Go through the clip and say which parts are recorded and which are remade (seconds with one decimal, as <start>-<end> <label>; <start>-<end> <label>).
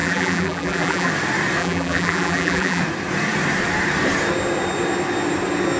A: 0.0-1.1 remade; 1.1-1.6 recorded; 1.6-2.8 remade; 2.8-5.8 recorded